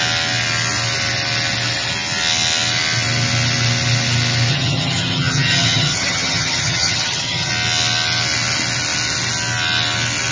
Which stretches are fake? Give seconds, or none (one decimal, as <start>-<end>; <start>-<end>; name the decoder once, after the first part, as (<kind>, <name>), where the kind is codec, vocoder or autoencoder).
4.5-7.5 (vocoder, HiFi-GAN)